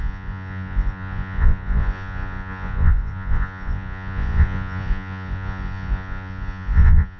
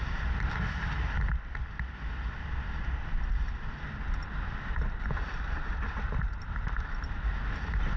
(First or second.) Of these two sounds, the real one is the second